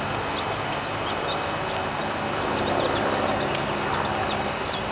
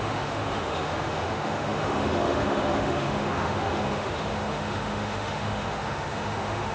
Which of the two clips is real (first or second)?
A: first